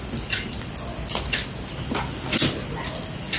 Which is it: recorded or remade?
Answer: recorded